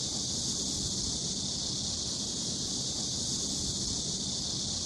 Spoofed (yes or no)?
no